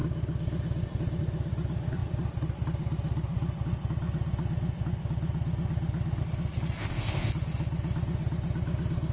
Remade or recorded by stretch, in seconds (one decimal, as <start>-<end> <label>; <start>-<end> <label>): 0.0-6.8 recorded; 6.8-7.3 remade; 7.3-9.1 recorded